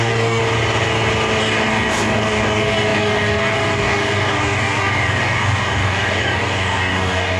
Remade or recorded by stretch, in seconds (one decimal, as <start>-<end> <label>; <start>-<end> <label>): 0.0-0.4 remade; 0.4-1.4 recorded; 1.4-7.4 remade